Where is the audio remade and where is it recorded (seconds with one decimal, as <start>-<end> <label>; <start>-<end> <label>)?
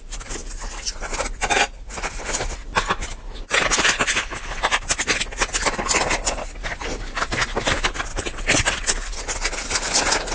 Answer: 0.0-8.1 recorded; 8.1-9.2 remade; 9.2-10.3 recorded